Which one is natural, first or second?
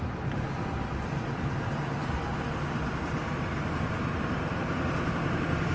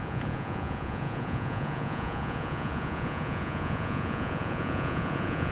first